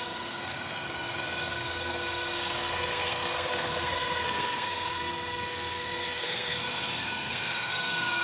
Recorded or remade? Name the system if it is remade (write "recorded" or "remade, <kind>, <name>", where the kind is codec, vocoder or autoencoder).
remade, codec, SNAC